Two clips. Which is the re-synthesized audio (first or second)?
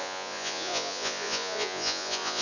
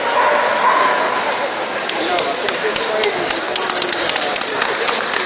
first